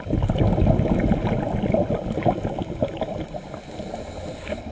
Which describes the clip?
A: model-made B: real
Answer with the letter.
B